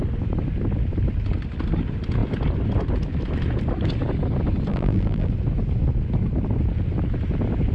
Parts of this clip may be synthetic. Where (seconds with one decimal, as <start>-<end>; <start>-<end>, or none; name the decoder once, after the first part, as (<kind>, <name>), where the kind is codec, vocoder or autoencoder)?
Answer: 4.7-5.3 (vocoder, BigVGAN v2)